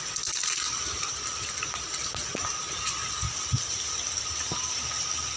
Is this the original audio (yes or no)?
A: yes